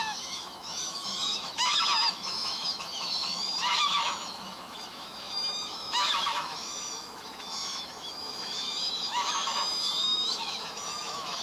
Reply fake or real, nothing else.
fake